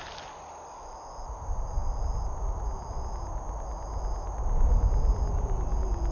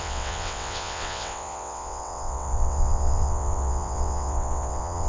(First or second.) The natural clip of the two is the first